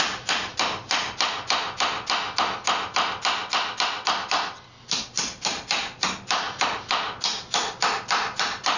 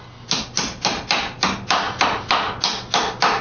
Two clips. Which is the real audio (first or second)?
second